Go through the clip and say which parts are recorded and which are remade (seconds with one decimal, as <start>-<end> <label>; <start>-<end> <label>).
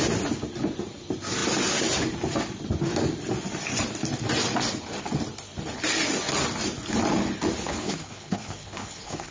0.0-7.7 recorded; 7.7-9.3 remade